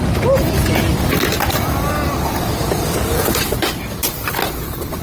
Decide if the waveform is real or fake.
real